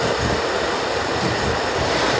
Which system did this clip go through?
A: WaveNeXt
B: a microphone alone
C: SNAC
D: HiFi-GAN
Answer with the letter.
B